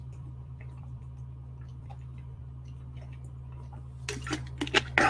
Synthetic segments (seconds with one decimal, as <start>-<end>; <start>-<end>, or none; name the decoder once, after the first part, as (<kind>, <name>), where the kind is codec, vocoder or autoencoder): 0.0-1.0 (vocoder, BigVGAN v2); 1.7-2.4

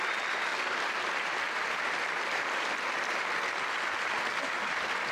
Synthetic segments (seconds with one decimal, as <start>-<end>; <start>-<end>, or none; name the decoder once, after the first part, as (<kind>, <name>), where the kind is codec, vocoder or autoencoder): 0.5-3.6 (vocoder, BigVGAN v2)

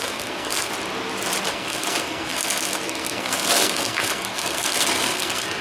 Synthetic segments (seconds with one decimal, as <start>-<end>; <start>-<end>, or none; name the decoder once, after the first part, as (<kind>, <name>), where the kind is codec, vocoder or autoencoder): 0.0-0.7 (codec, SNAC); 1.5-5.6

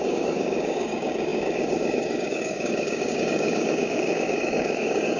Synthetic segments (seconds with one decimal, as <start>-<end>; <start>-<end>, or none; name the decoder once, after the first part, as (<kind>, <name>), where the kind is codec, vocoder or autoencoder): 0.0-5.2 (codec, DAC)

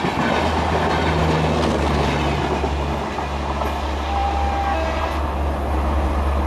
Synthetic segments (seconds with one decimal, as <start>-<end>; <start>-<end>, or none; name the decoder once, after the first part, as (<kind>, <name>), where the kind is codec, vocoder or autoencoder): none